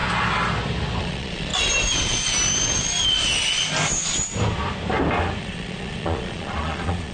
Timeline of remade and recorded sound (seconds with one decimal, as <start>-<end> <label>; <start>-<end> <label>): 0.0-1.0 recorded; 1.0-1.5 remade; 1.5-5.4 recorded; 5.4-7.1 remade